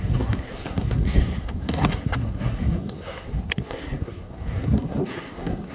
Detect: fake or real fake